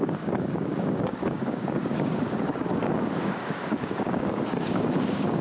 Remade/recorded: remade